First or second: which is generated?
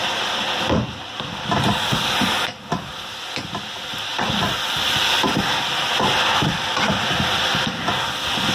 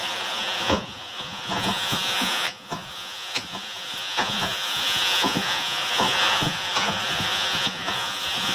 second